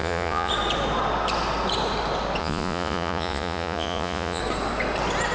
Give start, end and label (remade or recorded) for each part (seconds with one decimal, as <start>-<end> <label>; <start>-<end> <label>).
0.0-0.5 remade; 0.5-2.4 recorded; 2.4-4.4 remade; 4.4-5.3 recorded